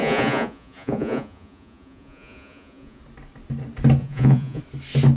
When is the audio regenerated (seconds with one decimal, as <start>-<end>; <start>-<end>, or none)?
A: 0.0-3.0; 4.0-4.6